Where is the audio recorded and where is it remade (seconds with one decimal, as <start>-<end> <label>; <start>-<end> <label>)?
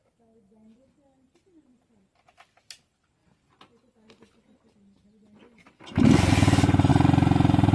0.0-7.7 recorded